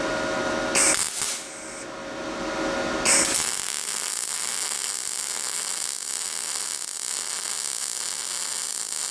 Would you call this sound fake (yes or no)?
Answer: no